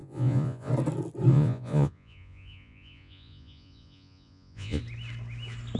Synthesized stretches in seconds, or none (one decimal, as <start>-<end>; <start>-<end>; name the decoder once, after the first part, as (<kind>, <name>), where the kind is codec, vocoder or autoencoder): 0.0-0.7 (vocoder, Vocos); 1.3-4.8